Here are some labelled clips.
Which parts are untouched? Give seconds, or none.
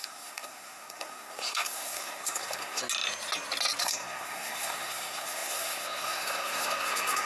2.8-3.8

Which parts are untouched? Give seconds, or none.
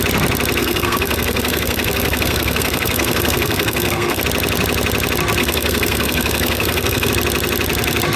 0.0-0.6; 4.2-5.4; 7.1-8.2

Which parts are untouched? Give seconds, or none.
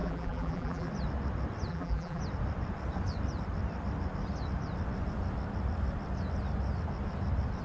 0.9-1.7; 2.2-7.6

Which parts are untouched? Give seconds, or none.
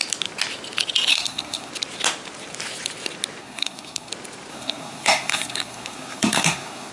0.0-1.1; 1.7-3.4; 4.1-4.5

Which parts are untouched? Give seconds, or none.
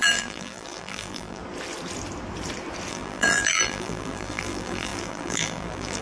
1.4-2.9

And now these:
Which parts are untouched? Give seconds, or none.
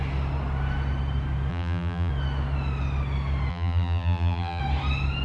0.0-1.5; 2.1-3.5; 4.6-5.2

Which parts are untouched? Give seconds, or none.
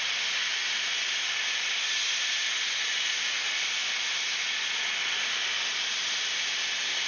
0.0-7.1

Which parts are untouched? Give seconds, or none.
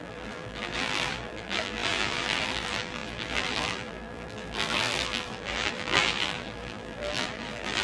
none